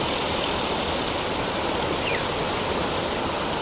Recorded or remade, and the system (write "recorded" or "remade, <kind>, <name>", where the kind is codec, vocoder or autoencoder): recorded